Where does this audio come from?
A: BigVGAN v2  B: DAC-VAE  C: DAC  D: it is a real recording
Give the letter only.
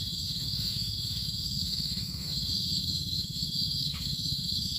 B